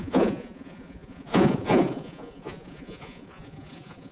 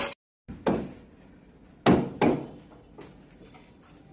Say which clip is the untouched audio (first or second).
second